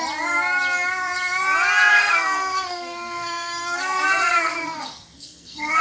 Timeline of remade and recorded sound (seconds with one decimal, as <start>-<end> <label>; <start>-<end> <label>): 0.0-1.9 recorded; 1.9-5.8 remade